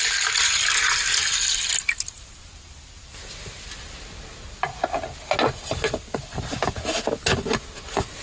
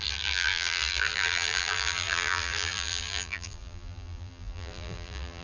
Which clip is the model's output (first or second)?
second